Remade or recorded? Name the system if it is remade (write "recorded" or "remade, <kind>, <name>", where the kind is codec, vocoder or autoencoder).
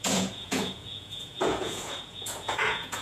remade, vocoder, Vocos